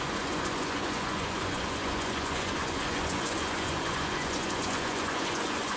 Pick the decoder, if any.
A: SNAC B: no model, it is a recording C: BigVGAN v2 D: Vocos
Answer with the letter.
D